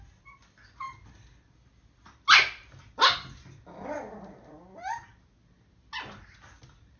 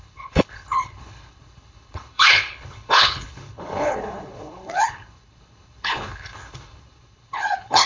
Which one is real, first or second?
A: first